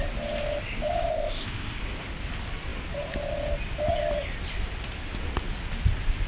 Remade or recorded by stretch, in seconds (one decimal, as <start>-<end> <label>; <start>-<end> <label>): 0.0-1.1 recorded; 1.1-1.8 remade; 1.8-6.3 recorded